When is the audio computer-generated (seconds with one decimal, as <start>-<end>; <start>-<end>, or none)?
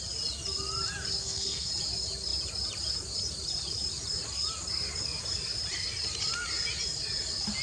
1.2-1.7